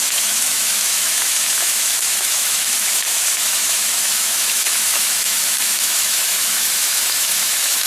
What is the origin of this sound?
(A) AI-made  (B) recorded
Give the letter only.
A